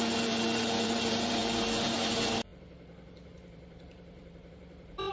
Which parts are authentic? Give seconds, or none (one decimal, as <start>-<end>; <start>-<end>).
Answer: none